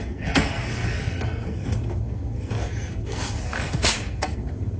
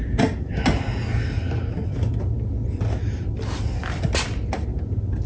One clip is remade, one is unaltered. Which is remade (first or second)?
first